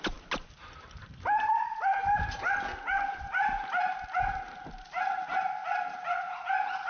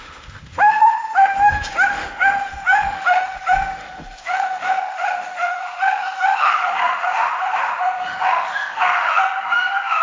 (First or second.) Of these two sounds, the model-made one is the second